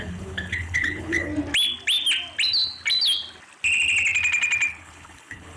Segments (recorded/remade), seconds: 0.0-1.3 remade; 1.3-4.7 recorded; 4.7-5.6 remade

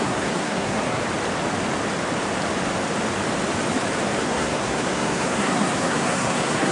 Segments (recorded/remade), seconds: 0.0-1.0 remade; 1.0-4.2 recorded; 4.2-6.7 remade

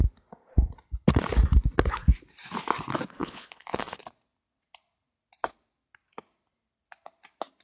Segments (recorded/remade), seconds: 0.0-3.2 recorded; 3.2-4.0 remade; 4.0-7.6 recorded

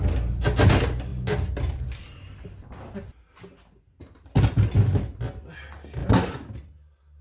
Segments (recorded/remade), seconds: 0.0-7.2 recorded

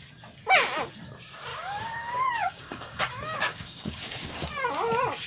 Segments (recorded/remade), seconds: 0.0-1.5 recorded; 1.5-4.7 remade; 4.7-5.3 recorded

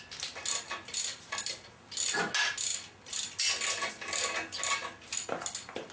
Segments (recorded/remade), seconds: 0.0-5.9 recorded